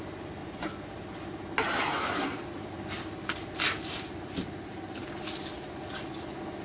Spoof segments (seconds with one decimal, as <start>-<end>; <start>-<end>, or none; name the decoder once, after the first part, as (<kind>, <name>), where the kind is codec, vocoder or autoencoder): 0.4-3.0 (vocoder, BigVGAN v2)